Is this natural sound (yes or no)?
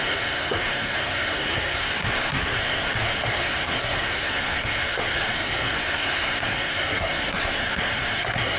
no